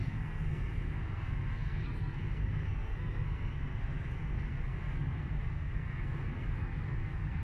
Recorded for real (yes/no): no